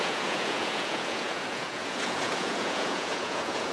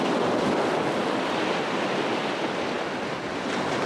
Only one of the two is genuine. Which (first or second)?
second